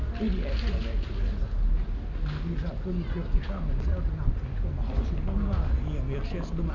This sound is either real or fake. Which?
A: real